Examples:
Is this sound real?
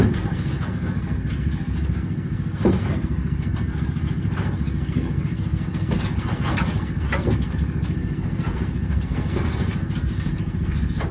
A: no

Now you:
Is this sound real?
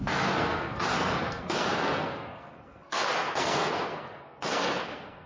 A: no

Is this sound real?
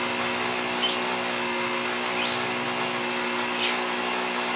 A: yes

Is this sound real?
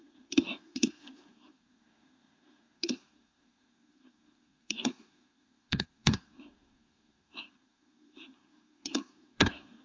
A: no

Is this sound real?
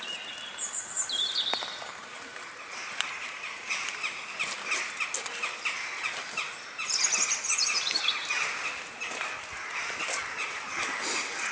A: yes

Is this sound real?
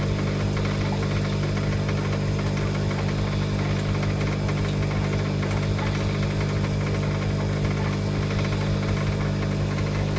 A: yes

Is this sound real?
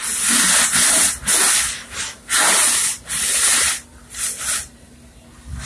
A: yes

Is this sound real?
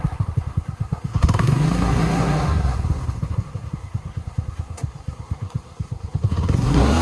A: no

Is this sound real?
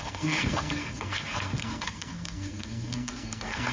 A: no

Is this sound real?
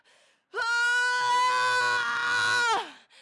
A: yes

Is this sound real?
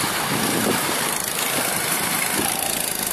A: yes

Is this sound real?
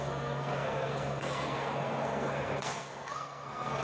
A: no